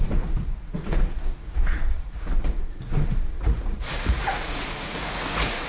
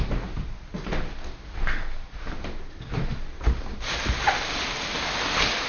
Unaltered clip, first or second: second